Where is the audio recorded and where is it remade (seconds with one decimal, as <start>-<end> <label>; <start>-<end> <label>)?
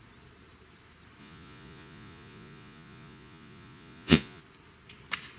0.0-1.2 recorded; 1.2-4.4 remade; 4.4-5.4 recorded